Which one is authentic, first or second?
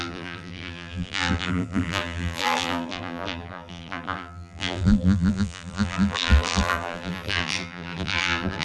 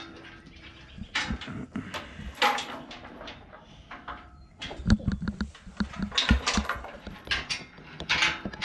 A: second